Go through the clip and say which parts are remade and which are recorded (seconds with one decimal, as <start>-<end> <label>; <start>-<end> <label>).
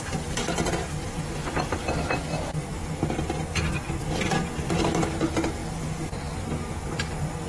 0.0-7.5 recorded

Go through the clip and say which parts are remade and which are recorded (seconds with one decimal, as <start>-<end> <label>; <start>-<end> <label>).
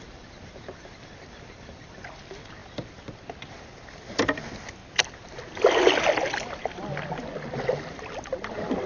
0.0-8.9 recorded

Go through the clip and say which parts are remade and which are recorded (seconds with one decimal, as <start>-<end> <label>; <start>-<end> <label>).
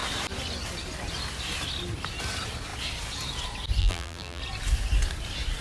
0.0-3.8 recorded; 3.8-4.4 remade; 4.4-5.6 recorded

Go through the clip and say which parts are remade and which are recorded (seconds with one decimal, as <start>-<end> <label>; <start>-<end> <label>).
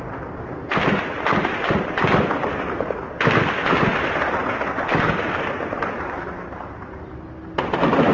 0.0-8.1 recorded